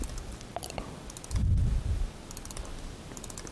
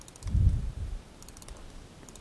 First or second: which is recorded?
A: first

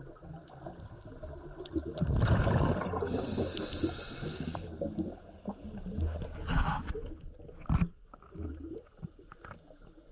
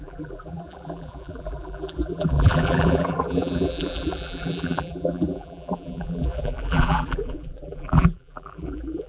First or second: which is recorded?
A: first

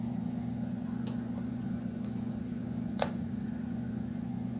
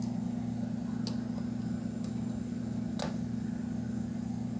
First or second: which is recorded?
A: second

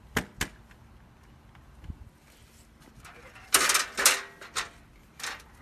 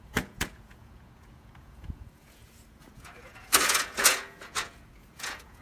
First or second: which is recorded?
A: first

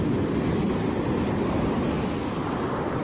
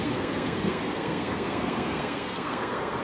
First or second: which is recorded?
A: first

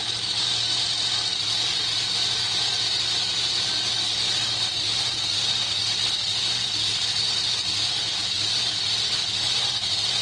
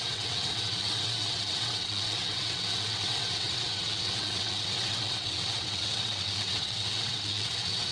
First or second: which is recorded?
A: first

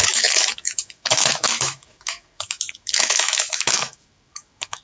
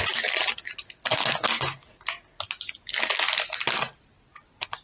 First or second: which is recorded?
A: second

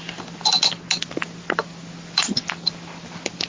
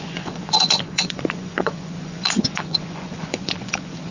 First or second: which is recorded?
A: first